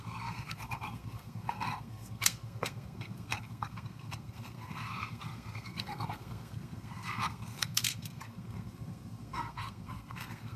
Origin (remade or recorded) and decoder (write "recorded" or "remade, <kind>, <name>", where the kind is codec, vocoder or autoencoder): remade, codec, SNAC